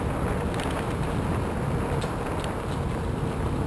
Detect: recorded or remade recorded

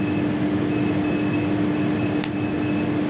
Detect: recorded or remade recorded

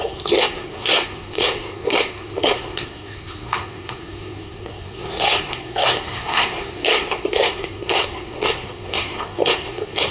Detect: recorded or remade remade